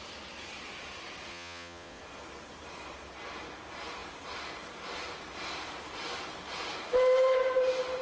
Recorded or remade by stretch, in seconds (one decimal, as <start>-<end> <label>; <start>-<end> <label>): 0.0-1.3 recorded; 1.3-2.0 remade; 2.0-8.0 recorded